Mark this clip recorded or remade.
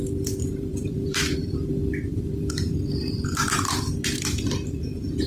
remade